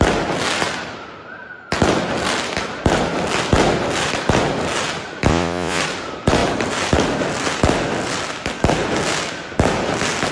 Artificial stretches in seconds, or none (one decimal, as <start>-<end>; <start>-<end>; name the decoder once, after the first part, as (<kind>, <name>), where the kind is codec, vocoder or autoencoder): 5.3-5.8 (vocoder, Vocos)